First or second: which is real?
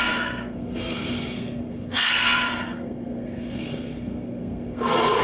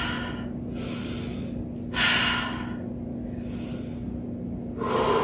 second